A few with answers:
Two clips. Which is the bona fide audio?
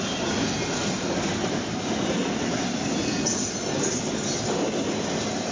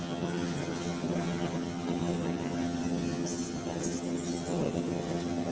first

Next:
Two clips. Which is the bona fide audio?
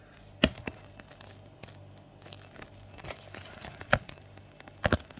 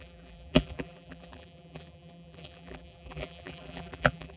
first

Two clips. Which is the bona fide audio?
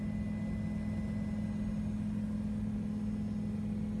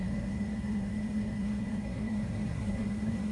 first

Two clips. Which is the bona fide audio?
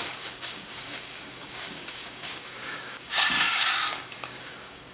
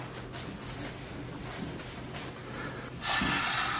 second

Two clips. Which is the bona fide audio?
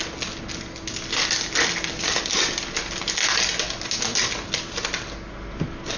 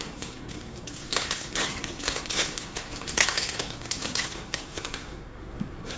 first